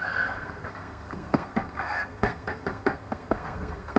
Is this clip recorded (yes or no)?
no